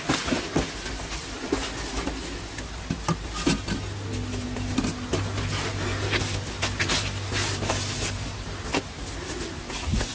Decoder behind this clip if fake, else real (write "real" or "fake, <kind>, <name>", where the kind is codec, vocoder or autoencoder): real